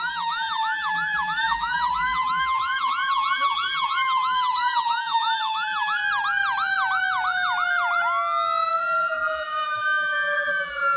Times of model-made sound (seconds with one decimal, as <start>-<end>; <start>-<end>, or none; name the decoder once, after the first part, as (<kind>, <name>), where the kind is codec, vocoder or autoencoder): 0.0-6.0 (vocoder, BigVGAN v2); 8.7-11.0